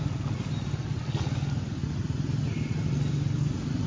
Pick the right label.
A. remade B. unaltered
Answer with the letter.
B